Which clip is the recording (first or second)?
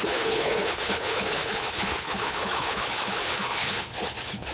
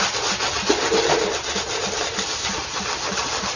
second